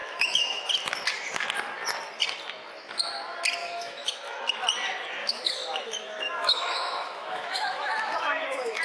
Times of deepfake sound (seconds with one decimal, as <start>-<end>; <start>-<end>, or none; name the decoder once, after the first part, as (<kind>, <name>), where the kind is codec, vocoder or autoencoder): 0.0-0.7 (autoencoder, DAC-VAE); 3.6-4.4; 5.2-8.8